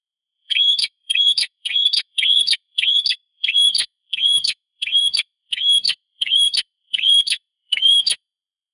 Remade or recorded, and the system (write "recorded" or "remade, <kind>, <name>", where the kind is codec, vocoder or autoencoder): remade, codec, SNAC